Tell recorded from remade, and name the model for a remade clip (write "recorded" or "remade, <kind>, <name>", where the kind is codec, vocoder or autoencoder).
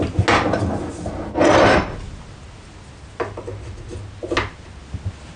recorded